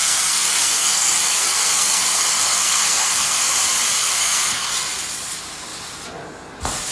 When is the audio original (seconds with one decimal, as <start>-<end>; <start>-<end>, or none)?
3.5-4.0; 4.7-6.9

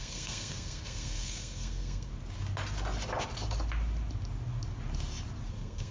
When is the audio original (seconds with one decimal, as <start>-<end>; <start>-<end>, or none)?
2.1-5.5

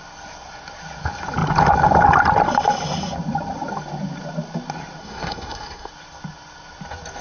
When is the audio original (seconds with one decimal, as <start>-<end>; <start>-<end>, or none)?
0.0-5.0; 5.9-7.2

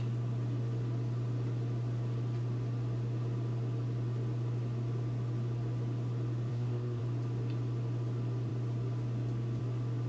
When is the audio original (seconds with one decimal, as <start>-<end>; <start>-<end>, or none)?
0.0-6.5; 7.0-10.1